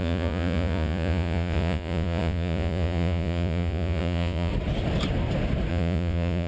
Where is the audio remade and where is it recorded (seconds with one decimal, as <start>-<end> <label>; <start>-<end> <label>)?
0.0-4.5 remade; 4.5-5.7 recorded; 5.7-6.5 remade

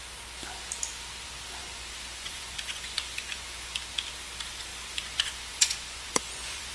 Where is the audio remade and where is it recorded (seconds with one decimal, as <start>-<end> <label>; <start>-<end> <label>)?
0.0-1.6 recorded; 1.6-3.8 remade; 3.8-4.7 recorded; 4.7-6.7 remade

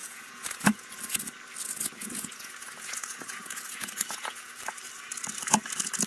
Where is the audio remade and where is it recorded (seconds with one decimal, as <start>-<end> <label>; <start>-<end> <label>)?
0.0-1.0 remade; 1.0-2.0 recorded; 2.0-4.6 remade; 4.6-6.1 recorded

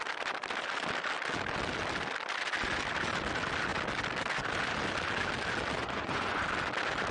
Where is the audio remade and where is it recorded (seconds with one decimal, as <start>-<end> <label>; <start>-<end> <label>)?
0.0-5.8 recorded; 5.8-6.4 remade; 6.4-7.1 recorded

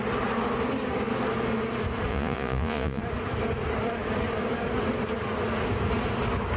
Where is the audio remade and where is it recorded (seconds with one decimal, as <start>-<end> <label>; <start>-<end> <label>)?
0.0-2.1 recorded; 2.1-3.0 remade; 3.0-6.6 recorded

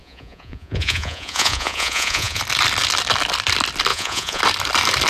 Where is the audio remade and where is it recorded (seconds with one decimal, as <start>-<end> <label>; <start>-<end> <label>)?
0.0-2.4 remade; 2.4-3.9 recorded; 3.9-4.4 remade; 4.4-5.1 recorded